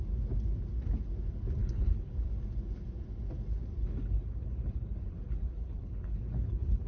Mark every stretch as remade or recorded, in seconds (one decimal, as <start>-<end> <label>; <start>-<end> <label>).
0.0-1.6 recorded; 1.6-2.1 remade; 2.1-3.8 recorded; 3.8-6.9 remade